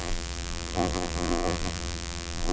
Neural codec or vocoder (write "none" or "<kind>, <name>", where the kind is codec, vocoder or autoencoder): vocoder, BigVGAN v2